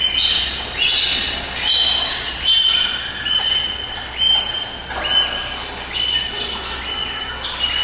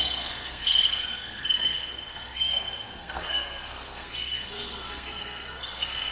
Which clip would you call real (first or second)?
first